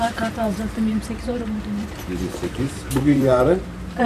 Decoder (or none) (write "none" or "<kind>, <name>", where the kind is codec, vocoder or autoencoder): vocoder, BigVGAN v2